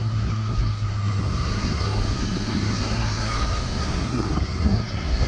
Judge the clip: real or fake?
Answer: fake